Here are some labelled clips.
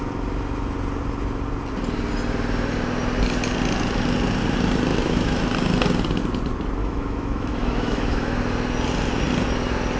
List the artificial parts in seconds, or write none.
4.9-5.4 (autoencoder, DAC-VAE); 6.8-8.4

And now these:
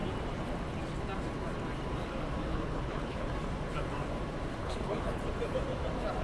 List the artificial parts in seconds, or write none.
2.5-3.3 (codec, HILCodec); 4.6-5.2

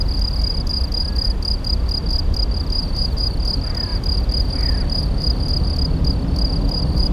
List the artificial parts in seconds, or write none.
none

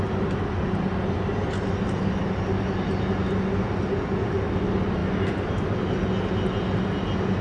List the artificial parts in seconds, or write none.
none

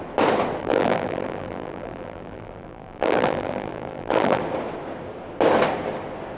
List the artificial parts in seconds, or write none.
0.6-4.4 (vocoder, BigVGAN v2)

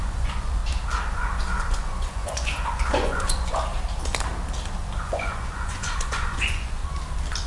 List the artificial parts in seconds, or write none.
0.0-0.6 (vocoder, Vocos); 1.1-3.7; 5.0-6.8